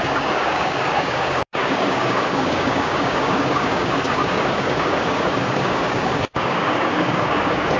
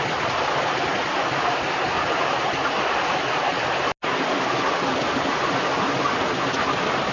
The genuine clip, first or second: second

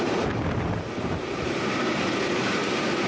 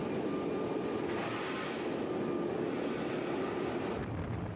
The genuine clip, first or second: second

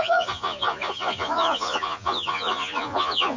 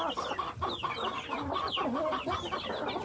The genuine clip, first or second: second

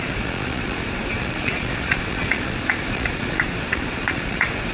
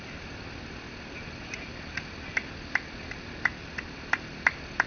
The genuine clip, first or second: second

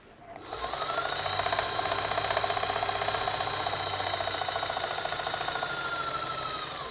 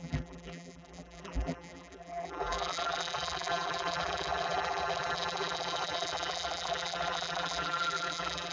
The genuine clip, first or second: first